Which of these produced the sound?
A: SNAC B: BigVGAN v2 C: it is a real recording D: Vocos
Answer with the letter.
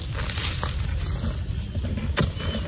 C